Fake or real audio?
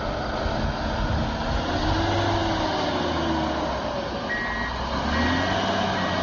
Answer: real